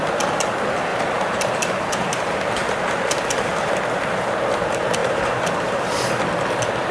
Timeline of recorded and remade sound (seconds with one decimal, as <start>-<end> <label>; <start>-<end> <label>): 0.0-0.9 recorded; 0.9-3.7 remade; 3.7-5.0 recorded; 5.0-5.9 remade; 5.9-6.9 recorded